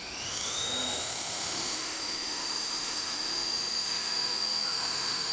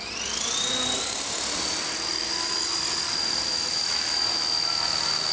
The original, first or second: second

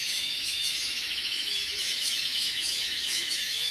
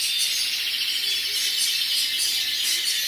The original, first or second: second